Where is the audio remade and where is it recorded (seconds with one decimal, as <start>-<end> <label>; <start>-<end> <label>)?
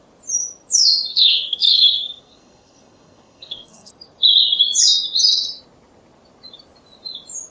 0.0-1.1 recorded; 1.1-3.9 remade; 3.9-7.5 recorded